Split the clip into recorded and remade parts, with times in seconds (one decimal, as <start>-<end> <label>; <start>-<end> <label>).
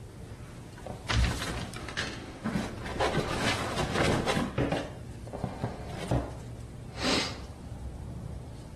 0.0-1.8 recorded; 1.8-2.5 remade; 2.5-8.8 recorded